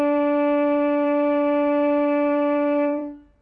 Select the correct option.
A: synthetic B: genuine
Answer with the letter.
A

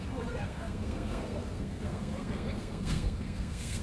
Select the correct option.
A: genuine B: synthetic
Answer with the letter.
B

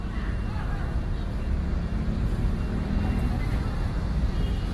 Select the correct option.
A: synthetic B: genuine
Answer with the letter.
B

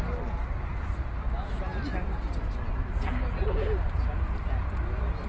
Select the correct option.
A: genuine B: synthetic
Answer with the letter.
A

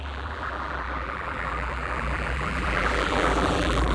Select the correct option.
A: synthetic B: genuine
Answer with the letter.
A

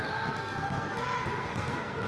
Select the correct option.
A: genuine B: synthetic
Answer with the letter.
B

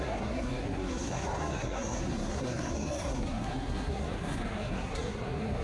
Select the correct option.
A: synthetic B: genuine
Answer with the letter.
A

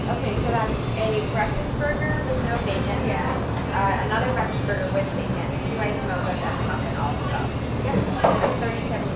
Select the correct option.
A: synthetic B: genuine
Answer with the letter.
B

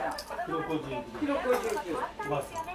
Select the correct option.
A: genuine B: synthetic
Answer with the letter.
A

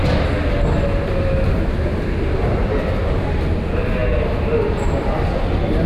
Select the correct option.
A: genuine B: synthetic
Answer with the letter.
A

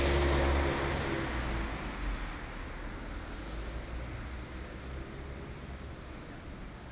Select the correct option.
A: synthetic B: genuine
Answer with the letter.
B